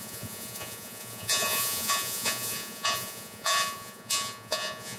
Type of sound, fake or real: fake